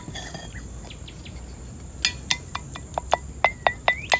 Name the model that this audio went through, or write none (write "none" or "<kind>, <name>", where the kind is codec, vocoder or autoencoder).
none